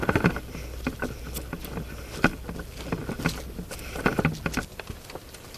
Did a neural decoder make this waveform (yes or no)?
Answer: yes